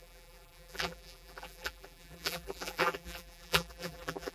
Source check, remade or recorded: remade